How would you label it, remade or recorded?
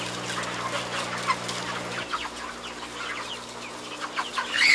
recorded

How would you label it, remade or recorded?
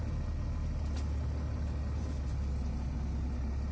recorded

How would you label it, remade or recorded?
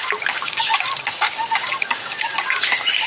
remade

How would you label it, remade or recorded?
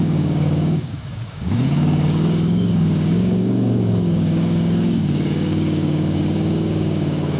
remade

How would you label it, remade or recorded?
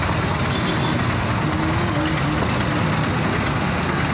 recorded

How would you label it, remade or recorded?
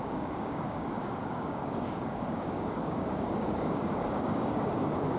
remade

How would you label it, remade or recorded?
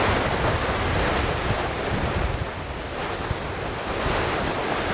recorded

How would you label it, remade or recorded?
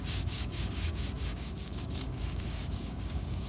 remade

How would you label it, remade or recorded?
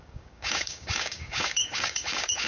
remade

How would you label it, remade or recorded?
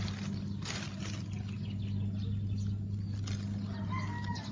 recorded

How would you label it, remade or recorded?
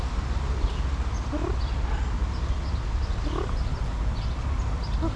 recorded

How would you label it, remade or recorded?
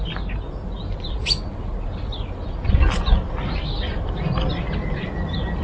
recorded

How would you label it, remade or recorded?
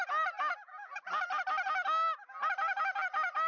recorded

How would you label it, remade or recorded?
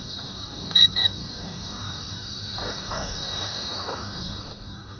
remade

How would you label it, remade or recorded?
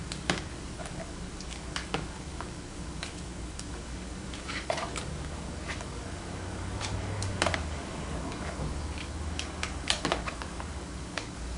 remade